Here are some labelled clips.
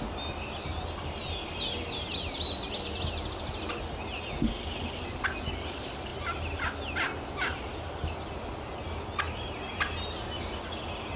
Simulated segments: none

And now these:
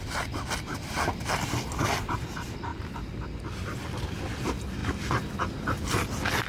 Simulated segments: none